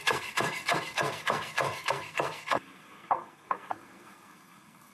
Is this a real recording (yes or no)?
no